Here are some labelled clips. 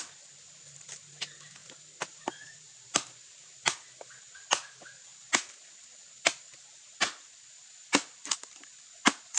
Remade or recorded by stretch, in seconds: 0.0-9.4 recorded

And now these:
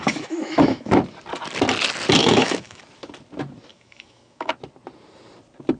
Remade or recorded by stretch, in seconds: 0.0-0.9 remade; 0.9-2.2 recorded; 2.2-2.8 remade; 2.8-3.7 recorded; 3.7-4.5 remade; 4.5-5.8 recorded

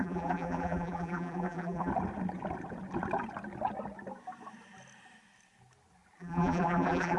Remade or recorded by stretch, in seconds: 0.0-1.9 remade; 1.9-6.2 recorded; 6.2-7.2 remade